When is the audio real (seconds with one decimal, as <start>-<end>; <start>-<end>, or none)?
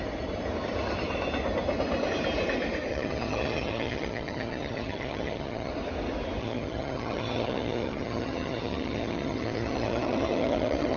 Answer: 0.0-2.9; 5.7-6.4